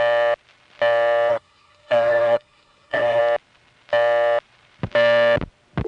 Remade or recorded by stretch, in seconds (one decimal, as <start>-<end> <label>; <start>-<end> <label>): 0.0-1.3 recorded; 1.3-3.2 remade; 3.2-5.9 recorded